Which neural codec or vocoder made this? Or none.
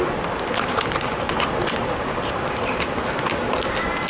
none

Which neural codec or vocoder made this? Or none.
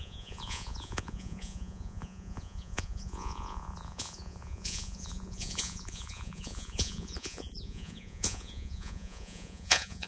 vocoder, Vocos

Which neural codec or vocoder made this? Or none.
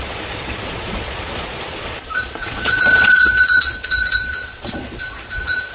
vocoder, Vocos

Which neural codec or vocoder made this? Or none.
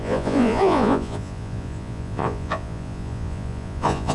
vocoder, Vocos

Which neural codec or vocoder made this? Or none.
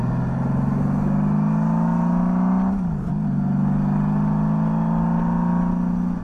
none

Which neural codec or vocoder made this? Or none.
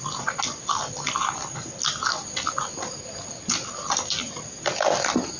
none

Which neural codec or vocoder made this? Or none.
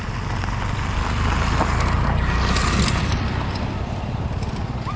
none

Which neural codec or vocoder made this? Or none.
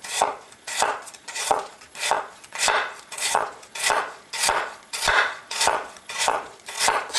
vocoder, Vocos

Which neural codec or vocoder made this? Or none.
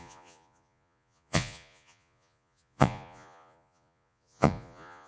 vocoder, Vocos